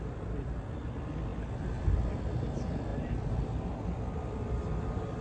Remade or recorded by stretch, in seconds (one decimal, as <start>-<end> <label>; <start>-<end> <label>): 0.0-5.2 recorded